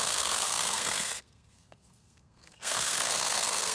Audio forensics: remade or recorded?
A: remade